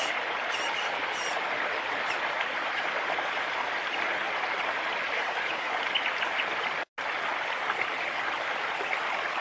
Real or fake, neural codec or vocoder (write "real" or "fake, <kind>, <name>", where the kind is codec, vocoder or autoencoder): real